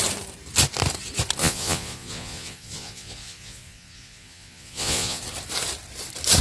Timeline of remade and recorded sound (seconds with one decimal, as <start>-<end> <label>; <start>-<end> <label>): 0.0-1.4 recorded; 1.4-5.2 remade; 5.2-6.4 recorded